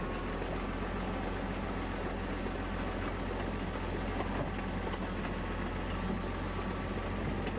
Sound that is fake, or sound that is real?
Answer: real